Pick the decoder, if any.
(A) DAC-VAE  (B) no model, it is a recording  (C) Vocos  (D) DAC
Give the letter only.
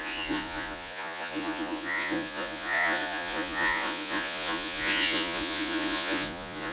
C